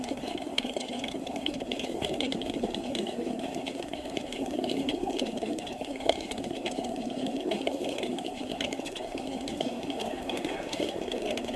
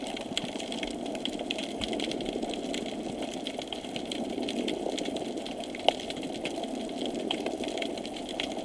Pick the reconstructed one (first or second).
first